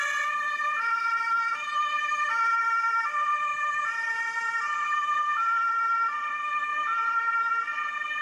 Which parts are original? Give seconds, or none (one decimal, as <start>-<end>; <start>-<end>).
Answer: 0.0-3.5; 5.8-6.7